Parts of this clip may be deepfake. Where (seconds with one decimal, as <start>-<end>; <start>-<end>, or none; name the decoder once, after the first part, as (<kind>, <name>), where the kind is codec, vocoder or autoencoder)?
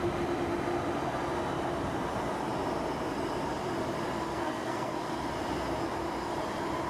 4.3-5.2 (codec, SNAC)